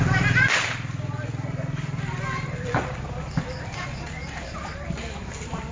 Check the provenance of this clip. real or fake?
fake